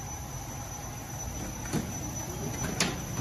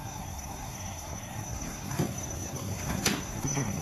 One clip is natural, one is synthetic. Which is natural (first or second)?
first